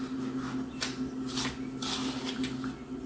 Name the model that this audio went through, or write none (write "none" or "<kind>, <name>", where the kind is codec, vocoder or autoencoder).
none